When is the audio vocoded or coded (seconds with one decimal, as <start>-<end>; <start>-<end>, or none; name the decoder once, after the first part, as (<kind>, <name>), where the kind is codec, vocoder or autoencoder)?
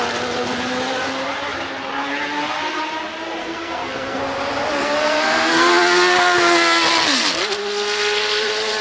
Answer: 3.4-4.2 (codec, SNAC); 4.8-5.7